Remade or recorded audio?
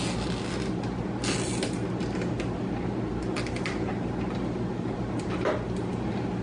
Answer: recorded